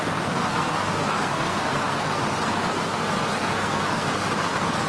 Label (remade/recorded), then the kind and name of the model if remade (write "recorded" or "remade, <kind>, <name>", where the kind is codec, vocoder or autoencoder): remade, codec, SNAC